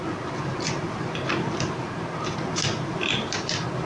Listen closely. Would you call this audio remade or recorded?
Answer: recorded